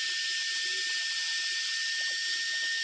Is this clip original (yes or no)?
yes